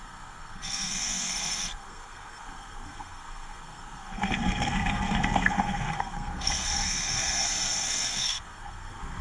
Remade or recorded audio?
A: remade